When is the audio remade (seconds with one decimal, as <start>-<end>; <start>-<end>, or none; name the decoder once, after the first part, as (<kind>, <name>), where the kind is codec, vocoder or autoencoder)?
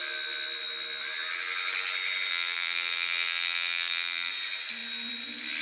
2.3-4.3 (vocoder, BigVGAN v2)